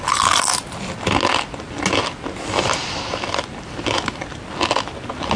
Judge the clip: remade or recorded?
recorded